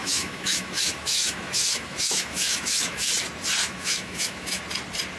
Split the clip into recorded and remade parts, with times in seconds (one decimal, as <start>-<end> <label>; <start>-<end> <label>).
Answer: 0.0-3.1 remade; 3.1-3.6 recorded; 3.6-4.6 remade; 4.6-5.2 recorded